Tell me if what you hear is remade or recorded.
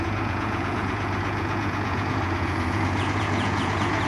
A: remade